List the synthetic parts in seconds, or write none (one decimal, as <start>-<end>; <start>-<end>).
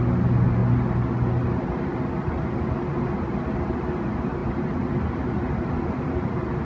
4.4-5.7